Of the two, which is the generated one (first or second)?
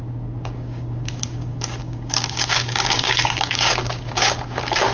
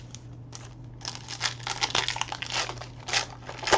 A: first